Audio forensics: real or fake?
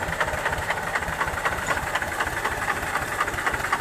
fake